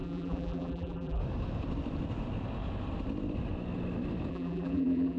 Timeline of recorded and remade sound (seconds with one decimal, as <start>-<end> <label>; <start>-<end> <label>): 0.0-1.2 remade; 1.2-4.3 recorded; 4.3-5.2 remade